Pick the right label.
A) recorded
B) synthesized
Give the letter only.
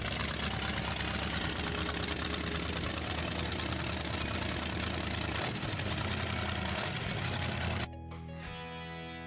A